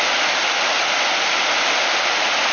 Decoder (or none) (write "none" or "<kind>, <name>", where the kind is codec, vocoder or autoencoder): none